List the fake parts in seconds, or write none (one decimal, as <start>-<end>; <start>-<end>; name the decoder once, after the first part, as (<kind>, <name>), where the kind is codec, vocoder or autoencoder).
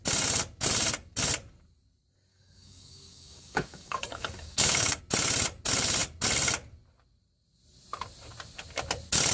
2.3-5.0 (codec, DAC)